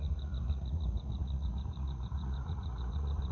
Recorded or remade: remade